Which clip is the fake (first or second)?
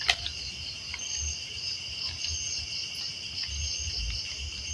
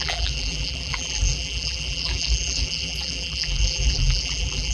second